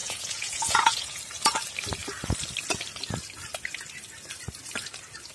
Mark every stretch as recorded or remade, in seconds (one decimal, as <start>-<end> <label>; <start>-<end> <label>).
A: 0.0-1.2 remade; 1.2-5.3 recorded